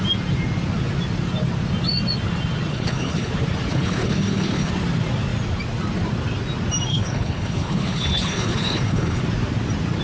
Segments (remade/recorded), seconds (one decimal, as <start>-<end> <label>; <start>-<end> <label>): 0.0-2.7 recorded; 2.7-3.3 remade; 3.3-3.7 recorded; 3.7-4.7 remade; 4.7-6.9 recorded; 6.9-9.2 remade; 9.2-10.0 recorded